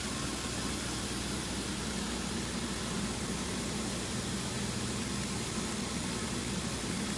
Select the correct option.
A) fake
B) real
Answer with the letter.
B